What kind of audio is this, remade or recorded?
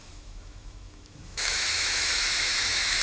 remade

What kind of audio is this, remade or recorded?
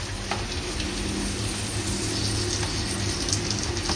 recorded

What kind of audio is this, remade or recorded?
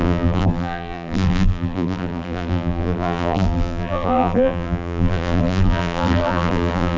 remade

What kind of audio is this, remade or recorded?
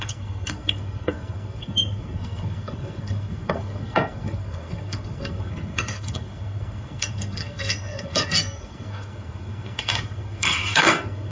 remade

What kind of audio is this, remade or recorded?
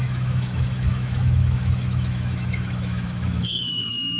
remade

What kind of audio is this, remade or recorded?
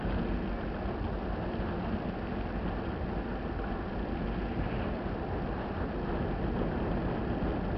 recorded